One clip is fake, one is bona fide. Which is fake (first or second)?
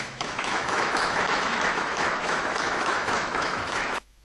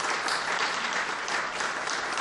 first